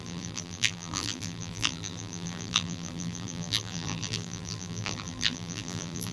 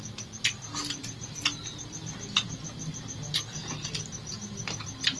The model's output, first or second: first